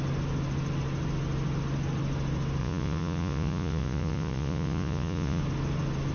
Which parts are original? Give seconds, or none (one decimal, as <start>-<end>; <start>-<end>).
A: 0.0-2.6; 5.4-6.1

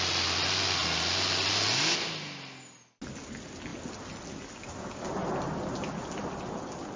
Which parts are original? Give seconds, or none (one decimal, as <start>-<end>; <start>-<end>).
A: 0.0-7.0

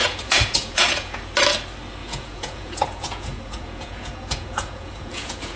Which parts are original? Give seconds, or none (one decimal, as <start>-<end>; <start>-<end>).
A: 1.2-2.0

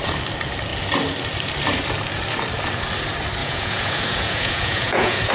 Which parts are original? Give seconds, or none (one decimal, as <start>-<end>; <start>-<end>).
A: 0.0-3.4

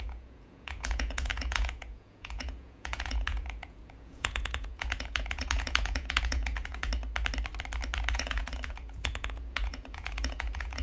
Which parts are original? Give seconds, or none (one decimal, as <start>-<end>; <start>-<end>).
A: 6.9-8.1

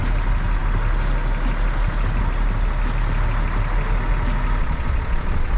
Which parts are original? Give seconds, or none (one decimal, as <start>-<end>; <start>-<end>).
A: 0.0-4.6